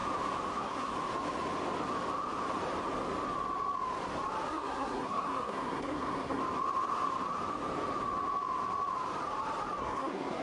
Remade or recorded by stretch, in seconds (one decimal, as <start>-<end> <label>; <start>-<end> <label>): 0.0-0.5 recorded; 0.5-0.9 remade; 0.9-4.5 recorded; 4.5-6.4 remade; 6.4-9.8 recorded; 9.8-10.4 remade